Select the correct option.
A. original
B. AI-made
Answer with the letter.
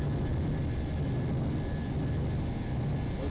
A